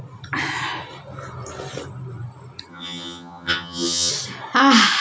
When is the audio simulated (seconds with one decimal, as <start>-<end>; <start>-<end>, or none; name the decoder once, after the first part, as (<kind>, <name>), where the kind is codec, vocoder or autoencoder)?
2.7-4.1 (vocoder, HiFi-GAN)